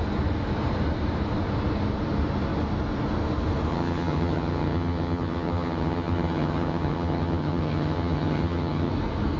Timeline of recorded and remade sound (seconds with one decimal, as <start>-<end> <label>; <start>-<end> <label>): 0.0-3.7 recorded; 3.7-8.9 remade; 8.9-9.4 recorded